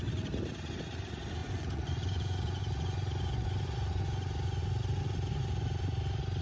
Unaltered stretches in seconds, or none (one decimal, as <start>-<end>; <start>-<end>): 0.0-1.4; 4.6-6.4